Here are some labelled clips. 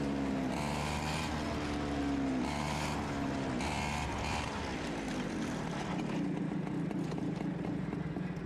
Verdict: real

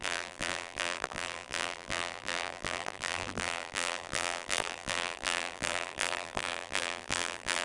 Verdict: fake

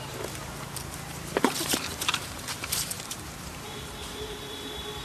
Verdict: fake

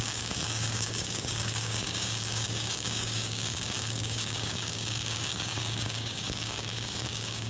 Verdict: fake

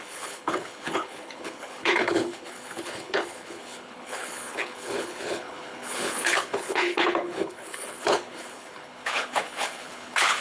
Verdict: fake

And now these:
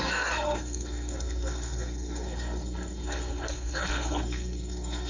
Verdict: fake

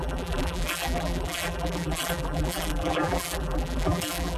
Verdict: fake